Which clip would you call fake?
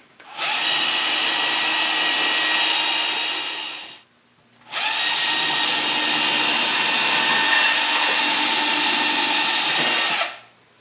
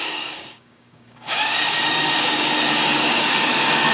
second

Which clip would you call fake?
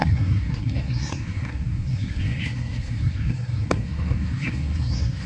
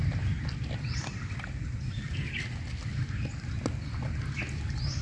first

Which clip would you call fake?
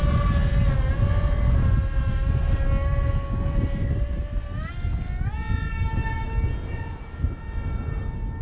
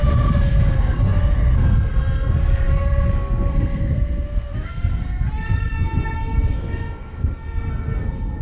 second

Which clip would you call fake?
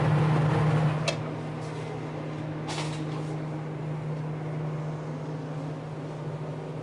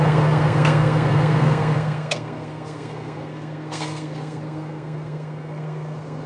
second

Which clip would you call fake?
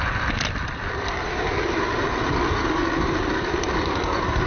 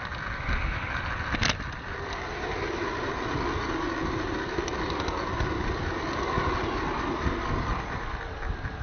first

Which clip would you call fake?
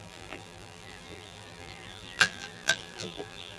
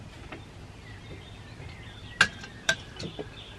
first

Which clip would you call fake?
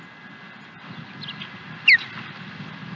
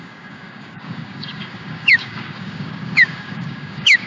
second